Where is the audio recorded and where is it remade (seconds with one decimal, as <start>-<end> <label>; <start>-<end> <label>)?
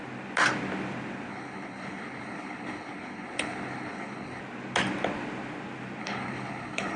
0.0-1.3 recorded; 1.3-4.4 remade; 4.4-6.0 recorded; 6.0-7.0 remade